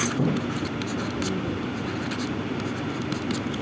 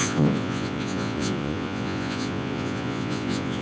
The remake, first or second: second